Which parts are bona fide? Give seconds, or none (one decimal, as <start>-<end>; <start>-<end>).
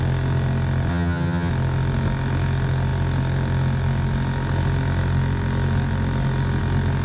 0.0-0.9; 1.5-7.0